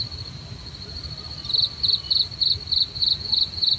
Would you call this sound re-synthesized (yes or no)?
no